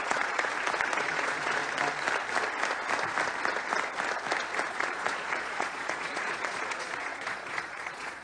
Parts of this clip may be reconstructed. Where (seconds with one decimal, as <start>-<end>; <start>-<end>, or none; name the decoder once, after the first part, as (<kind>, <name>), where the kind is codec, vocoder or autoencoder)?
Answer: 0.0-0.5 (vocoder, Vocos); 1.0-1.6; 4.7-8.2